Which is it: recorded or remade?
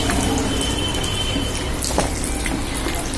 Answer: recorded